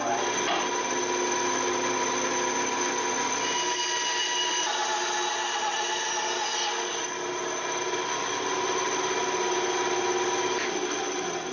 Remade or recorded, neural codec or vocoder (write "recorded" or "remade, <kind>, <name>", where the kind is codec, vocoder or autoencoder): recorded